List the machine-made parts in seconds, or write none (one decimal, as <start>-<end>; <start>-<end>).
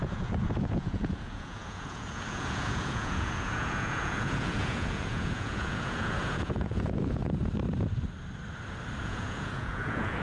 0.0-7.2; 9.0-10.2